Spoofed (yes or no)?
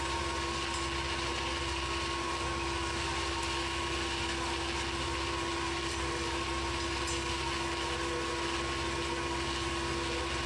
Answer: no